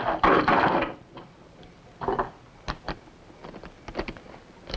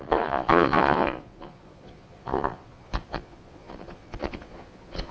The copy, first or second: second